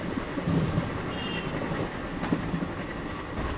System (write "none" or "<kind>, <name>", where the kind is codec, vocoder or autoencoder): none